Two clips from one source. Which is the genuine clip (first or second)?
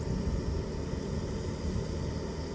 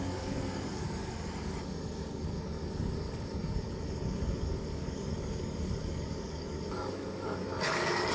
first